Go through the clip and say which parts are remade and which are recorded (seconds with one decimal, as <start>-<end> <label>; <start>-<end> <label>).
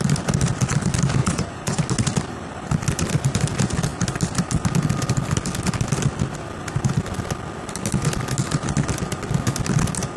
0.0-1.2 recorded; 1.2-1.8 remade; 1.8-10.2 recorded